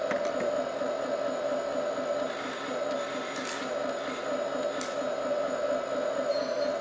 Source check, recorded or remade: recorded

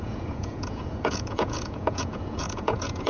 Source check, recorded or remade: remade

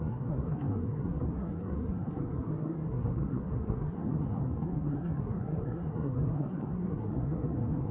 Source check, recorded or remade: remade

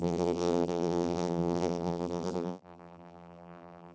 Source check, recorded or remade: remade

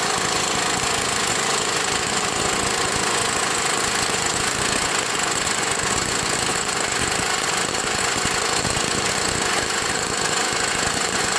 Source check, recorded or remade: remade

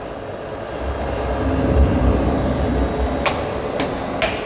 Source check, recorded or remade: recorded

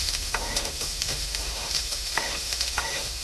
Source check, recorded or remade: remade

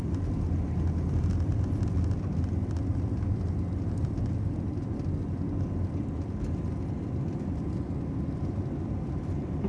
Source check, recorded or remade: recorded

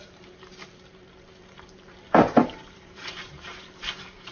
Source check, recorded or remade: remade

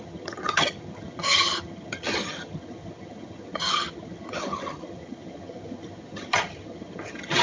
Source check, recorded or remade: remade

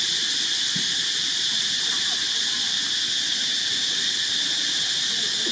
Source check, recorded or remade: recorded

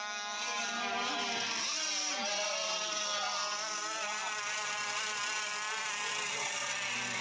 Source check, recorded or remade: recorded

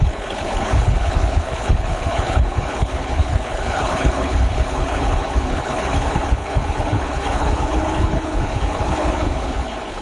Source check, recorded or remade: remade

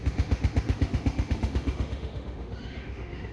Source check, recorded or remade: remade